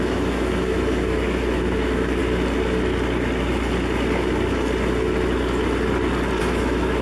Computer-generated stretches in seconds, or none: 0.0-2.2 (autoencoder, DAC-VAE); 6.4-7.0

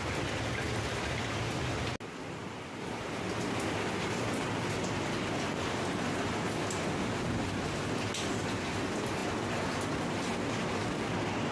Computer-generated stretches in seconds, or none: none

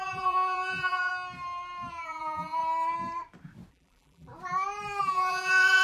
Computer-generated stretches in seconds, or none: 0.0-1.1 (vocoder, BigVGAN v2); 1.9-2.6; 3.7-4.3; 5.0-5.8